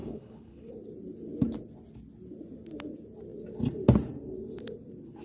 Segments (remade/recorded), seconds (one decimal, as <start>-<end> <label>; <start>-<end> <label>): 0.0-0.7 remade; 0.7-5.2 recorded